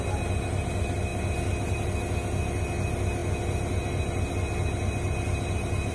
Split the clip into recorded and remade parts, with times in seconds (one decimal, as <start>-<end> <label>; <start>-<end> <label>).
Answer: 0.0-5.9 recorded